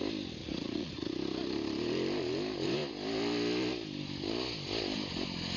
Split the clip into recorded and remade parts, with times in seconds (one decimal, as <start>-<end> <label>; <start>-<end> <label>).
0.0-0.4 recorded; 0.4-1.1 remade; 1.1-5.6 recorded